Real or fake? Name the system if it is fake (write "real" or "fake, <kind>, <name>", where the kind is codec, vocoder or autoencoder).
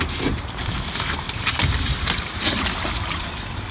real